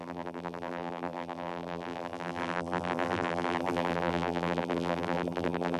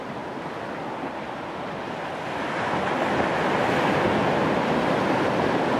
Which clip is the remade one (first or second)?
first